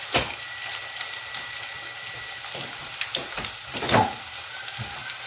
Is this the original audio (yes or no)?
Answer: yes